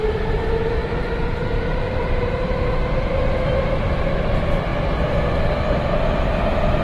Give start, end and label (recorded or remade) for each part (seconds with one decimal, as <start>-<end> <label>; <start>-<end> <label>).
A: 0.0-6.8 remade